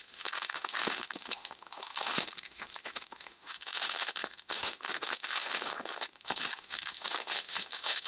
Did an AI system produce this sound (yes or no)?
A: yes